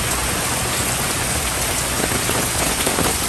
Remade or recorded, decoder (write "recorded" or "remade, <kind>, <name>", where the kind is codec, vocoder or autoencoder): remade, vocoder, Vocos